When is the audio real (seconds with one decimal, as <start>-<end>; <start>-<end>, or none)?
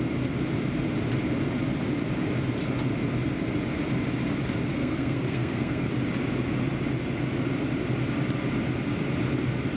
0.0-4.7; 5.9-9.8